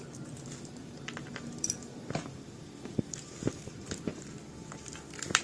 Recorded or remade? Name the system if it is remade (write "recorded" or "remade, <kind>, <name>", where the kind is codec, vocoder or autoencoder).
remade, vocoder, BigVGAN v2